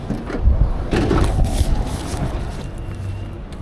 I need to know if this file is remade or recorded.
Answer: recorded